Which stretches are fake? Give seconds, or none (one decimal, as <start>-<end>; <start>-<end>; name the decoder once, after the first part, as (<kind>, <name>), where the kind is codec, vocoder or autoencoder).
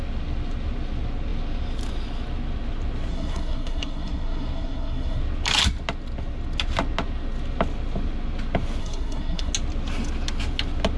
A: 3.1-5.2 (codec, SNAC); 8.8-9.5